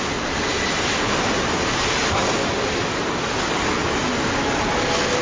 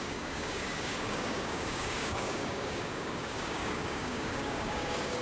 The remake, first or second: second